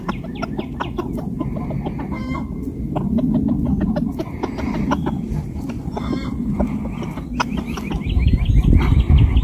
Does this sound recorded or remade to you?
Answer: recorded